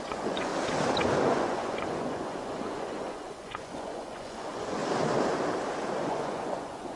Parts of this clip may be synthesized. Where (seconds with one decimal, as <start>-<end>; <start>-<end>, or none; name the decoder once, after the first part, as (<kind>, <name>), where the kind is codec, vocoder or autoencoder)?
0.0-0.5 (vocoder, Vocos); 1.2-4.8; 6.0-7.0